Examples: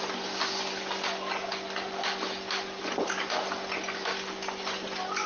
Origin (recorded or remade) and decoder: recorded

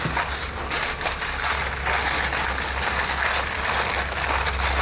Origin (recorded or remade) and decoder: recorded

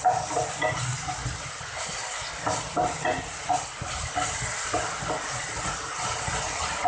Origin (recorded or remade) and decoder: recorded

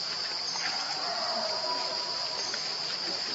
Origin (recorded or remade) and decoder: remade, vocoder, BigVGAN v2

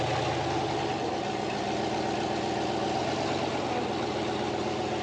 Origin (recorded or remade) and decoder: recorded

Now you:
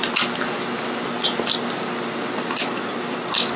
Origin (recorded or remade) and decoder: recorded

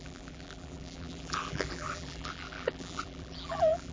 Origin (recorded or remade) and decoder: remade, vocoder, BigVGAN v2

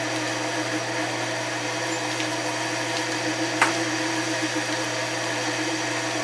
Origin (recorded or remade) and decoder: recorded